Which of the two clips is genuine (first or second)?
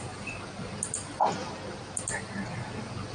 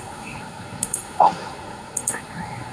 first